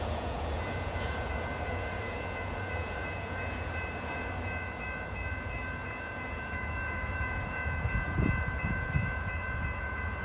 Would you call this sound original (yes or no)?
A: no